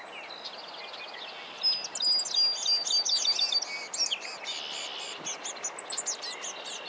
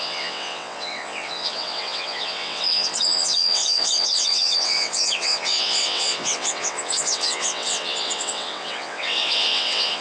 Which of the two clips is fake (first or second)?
second